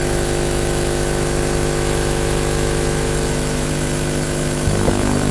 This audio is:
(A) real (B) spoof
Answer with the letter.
B